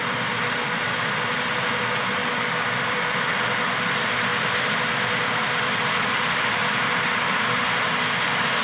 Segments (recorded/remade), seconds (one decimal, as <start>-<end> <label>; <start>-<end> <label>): 0.0-8.6 recorded